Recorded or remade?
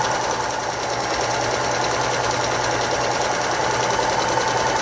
recorded